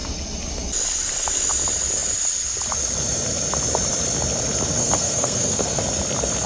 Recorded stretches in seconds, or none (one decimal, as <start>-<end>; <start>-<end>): 0.0-4.8; 5.8-6.5

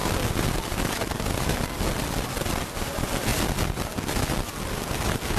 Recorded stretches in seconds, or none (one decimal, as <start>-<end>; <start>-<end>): 0.0-5.4

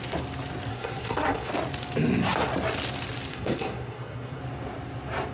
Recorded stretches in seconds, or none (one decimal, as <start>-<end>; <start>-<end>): 0.0-0.7; 1.5-3.3; 4.4-5.3

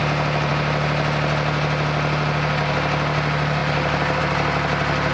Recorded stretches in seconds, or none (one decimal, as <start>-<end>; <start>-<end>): 0.0-5.1